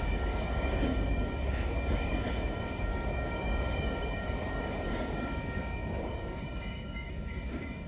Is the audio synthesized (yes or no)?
yes